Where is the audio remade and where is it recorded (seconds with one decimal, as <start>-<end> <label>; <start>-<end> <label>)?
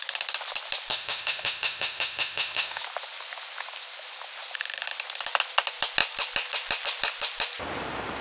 0.0-0.9 recorded; 0.9-2.8 remade; 2.8-8.2 recorded